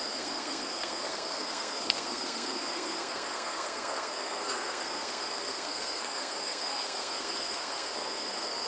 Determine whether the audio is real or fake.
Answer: fake